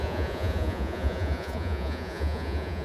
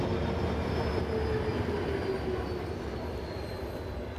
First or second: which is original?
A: second